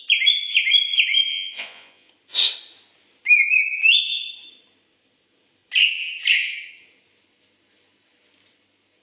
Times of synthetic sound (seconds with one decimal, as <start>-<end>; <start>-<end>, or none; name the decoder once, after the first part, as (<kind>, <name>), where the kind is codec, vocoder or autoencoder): 1.3-2.1 (vocoder, Vocos)

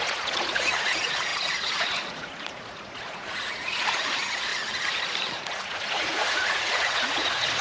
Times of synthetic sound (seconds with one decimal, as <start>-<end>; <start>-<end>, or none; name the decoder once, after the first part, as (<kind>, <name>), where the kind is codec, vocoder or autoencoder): 0.0-4.5 (vocoder, Vocos); 5.3-7.6

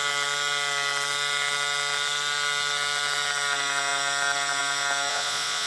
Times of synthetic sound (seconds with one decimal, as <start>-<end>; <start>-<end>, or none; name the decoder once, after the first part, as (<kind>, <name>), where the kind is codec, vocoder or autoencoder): 5.1-5.7 (vocoder, Vocos)